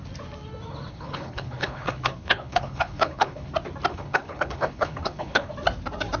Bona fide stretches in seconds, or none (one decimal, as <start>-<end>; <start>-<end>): 0.0-0.9; 3.5-3.9; 5.5-6.2